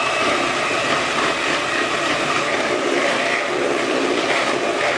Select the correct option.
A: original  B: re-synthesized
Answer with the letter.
B